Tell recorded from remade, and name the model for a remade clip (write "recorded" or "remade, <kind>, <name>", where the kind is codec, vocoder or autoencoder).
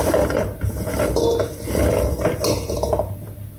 recorded